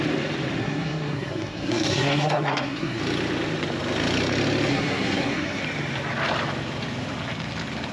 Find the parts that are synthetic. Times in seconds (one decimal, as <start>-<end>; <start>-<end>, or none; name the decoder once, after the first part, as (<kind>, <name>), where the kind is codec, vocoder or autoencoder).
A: 0.6-3.0 (codec, SNAC); 4.7-5.6